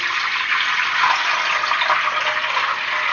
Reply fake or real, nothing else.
real